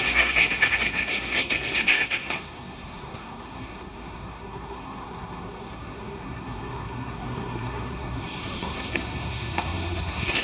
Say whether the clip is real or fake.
fake